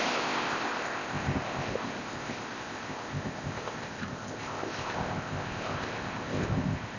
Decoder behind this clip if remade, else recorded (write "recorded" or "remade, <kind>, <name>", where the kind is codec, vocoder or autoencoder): remade, codec, ZipCodec